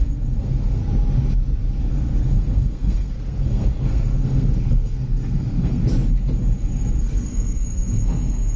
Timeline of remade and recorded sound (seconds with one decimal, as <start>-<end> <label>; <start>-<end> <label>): 0.0-0.8 remade; 0.8-1.8 recorded; 1.8-5.8 remade; 5.8-7.0 recorded; 7.0-8.6 remade